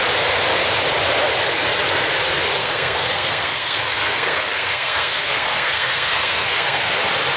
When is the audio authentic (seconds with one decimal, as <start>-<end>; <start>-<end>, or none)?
0.0-2.6; 6.9-7.4